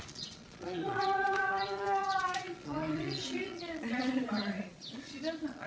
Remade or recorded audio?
remade